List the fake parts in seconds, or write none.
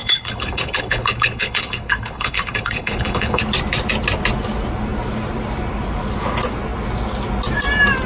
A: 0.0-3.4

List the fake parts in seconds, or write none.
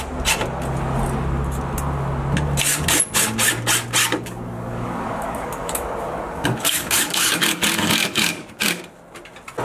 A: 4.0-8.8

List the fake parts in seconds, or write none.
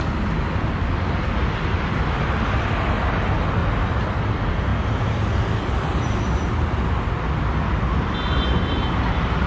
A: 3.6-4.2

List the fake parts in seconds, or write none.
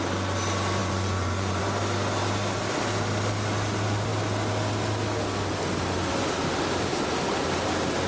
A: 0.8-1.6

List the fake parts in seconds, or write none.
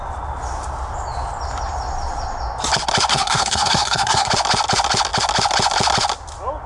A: 3.1-4.3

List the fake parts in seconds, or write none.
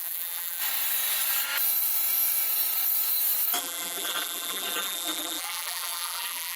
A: 0.0-0.6; 3.6-6.6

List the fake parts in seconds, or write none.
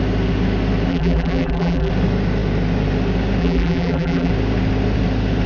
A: 0.9-1.9; 3.4-4.3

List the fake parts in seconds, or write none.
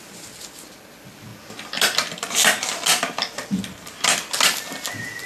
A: none